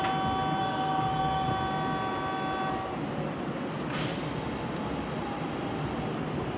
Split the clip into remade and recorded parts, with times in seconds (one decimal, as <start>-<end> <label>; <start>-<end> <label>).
0.0-0.6 recorded; 0.6-1.5 remade; 1.5-6.6 recorded